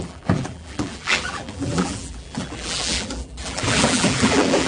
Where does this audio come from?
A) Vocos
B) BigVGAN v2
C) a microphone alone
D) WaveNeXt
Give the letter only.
B